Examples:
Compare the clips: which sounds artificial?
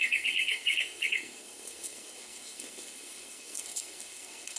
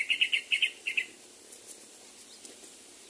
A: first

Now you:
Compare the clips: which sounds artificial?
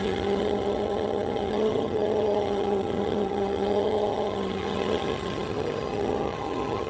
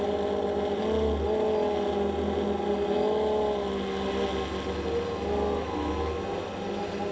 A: first